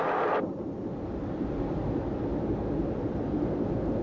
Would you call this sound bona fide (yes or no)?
yes